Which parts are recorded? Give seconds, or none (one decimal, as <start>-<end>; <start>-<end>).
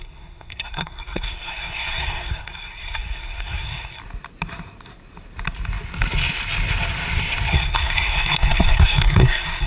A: 4.0-7.5